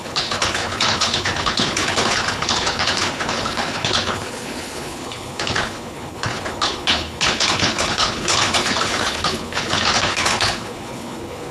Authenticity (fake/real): fake